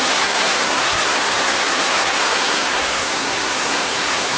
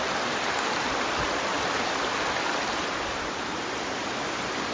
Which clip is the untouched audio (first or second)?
second